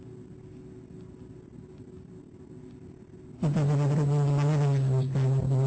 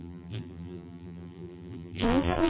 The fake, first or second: second